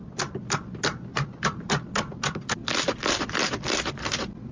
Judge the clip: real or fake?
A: real